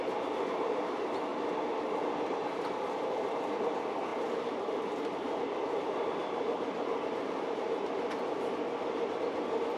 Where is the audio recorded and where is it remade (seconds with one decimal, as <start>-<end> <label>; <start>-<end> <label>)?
0.0-9.8 recorded